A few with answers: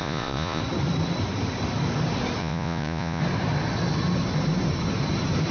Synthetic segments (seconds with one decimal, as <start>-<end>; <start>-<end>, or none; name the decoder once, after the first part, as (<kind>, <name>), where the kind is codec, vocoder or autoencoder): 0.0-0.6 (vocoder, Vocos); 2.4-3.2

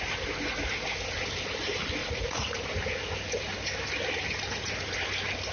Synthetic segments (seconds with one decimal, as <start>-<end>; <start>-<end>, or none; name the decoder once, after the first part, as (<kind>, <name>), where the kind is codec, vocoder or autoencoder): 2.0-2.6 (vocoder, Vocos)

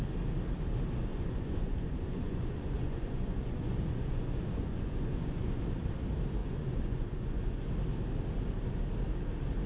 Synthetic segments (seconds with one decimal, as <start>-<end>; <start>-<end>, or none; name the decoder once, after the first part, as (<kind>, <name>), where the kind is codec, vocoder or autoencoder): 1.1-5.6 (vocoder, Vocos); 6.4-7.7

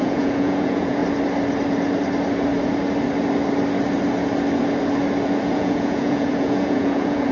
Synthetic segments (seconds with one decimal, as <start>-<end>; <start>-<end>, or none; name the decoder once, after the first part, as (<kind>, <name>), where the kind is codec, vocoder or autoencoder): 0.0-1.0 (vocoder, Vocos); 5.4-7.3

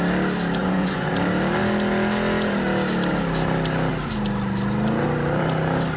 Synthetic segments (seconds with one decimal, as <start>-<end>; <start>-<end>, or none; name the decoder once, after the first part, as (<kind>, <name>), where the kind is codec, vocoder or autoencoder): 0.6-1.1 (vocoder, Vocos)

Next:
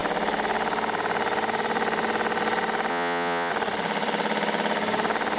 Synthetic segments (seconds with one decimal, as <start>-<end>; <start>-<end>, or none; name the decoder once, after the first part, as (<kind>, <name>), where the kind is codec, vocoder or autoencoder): 2.9-3.5 (vocoder, Vocos)

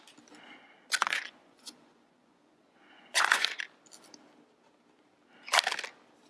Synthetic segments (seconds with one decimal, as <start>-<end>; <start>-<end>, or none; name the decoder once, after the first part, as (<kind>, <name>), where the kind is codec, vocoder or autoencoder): 1.0-3.6 (vocoder, Vocos)

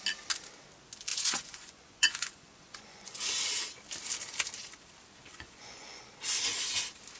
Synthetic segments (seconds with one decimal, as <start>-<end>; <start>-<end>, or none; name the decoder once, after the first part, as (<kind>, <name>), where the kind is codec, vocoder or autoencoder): 1.1-3.3 (vocoder, Vocos); 5.3-6.1